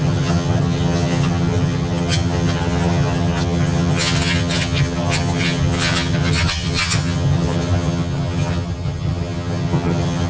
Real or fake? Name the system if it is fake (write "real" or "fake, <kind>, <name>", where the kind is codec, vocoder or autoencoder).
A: fake, vocoder, HiFi-GAN